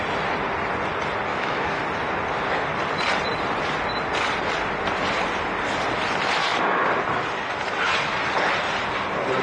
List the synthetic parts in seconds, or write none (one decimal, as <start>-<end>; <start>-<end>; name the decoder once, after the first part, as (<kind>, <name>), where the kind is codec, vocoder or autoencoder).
1.3-1.8 (autoencoder, DAC-VAE)